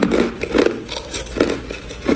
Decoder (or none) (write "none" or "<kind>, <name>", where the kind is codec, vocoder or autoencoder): none